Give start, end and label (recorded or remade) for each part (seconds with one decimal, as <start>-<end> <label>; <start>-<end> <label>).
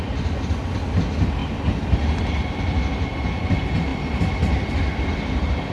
0.0-5.7 recorded